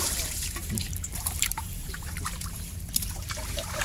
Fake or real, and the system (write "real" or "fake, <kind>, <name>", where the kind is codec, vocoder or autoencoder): fake, vocoder, BigVGAN v2